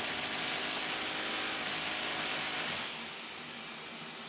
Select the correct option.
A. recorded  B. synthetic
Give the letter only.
A